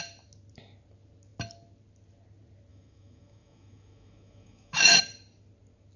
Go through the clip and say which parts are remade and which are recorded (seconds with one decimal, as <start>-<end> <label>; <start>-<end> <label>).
0.0-2.7 recorded; 2.7-5.0 remade; 5.0-6.0 recorded